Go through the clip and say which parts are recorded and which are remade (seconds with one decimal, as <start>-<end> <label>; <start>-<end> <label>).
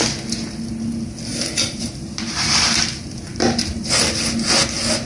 0.0-1.3 recorded; 1.3-4.0 remade; 4.0-5.1 recorded